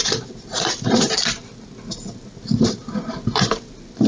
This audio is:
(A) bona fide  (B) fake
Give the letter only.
A